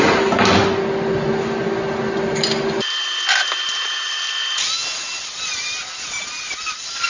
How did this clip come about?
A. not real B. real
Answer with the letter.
B